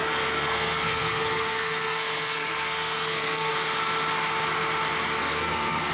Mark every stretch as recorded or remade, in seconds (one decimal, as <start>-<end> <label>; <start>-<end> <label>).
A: 0.0-3.5 remade; 3.5-5.2 recorded; 5.2-5.9 remade